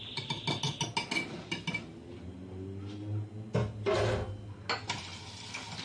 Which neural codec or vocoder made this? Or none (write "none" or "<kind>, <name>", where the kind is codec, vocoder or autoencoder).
none